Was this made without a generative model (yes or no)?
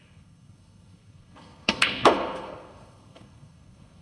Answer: no